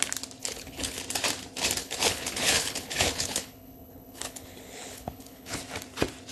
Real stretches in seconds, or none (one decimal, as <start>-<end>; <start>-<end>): 0.0-0.4; 1.0-1.8; 5.6-6.3